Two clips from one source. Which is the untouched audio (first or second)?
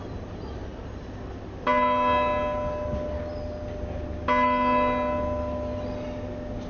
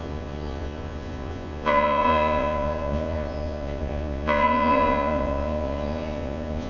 first